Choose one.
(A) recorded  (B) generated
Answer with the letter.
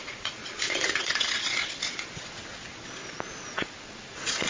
B